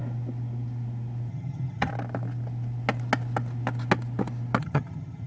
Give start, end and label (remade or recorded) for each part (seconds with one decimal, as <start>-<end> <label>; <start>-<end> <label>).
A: 0.0-1.3 recorded; 1.3-1.9 remade; 1.9-4.6 recorded; 4.6-5.3 remade